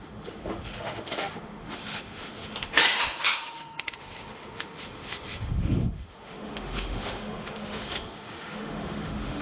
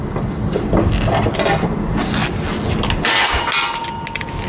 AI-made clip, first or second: first